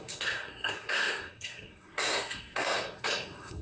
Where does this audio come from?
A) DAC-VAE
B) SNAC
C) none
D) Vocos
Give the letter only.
B